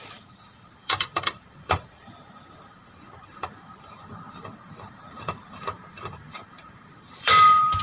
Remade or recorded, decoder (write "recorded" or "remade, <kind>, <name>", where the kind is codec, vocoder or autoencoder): remade, vocoder, BigVGAN v2